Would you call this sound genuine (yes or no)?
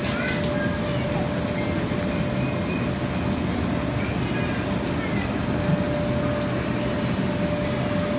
yes